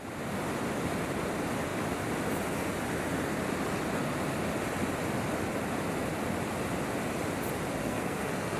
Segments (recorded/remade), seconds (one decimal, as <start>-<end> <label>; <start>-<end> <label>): 0.0-7.8 recorded; 7.8-8.6 remade